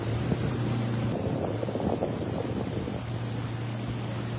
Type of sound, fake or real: real